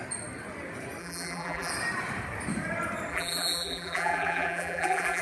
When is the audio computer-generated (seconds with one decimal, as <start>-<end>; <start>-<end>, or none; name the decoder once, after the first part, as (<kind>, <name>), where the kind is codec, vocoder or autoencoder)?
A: 1.0-1.7 (vocoder, BigVGAN v2); 3.1-5.2